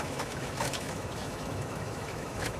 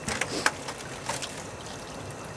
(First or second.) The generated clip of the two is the first